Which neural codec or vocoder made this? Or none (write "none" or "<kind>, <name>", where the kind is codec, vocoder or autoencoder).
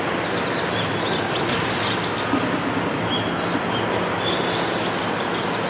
none